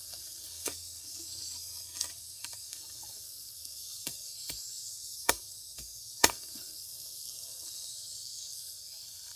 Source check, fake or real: fake